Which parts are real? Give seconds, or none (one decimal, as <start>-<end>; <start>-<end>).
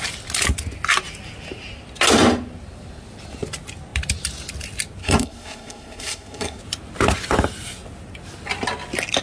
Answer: 0.0-5.0; 6.6-9.2